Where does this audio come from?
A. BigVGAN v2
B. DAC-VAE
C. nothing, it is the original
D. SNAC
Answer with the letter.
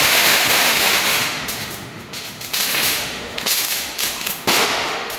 B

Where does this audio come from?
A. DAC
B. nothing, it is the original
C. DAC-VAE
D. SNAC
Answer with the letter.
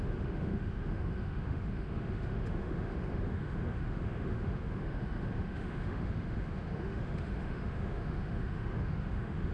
C